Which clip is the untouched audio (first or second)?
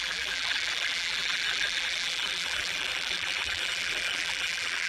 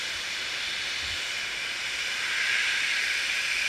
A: second